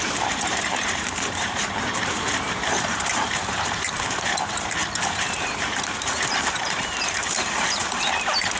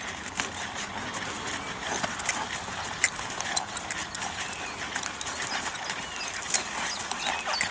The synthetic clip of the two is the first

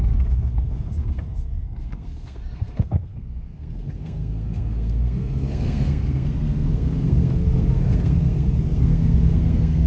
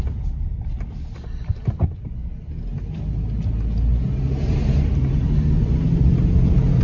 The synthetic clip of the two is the first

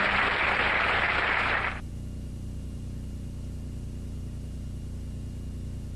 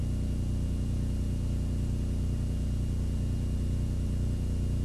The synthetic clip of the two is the first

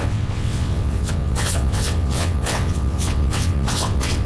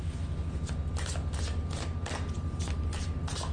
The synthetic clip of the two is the first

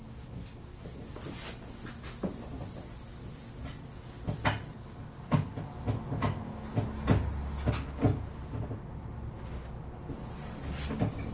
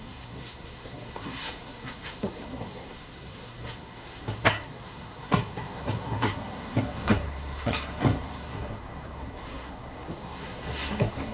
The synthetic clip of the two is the second